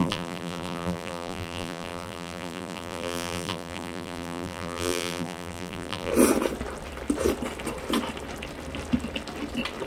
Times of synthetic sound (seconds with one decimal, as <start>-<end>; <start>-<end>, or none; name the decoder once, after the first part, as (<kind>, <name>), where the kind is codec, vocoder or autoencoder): 0.0-6.1 (vocoder, BigVGAN v2)